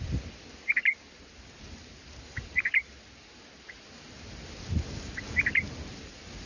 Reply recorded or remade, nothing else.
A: recorded